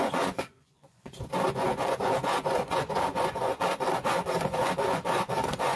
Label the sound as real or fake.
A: fake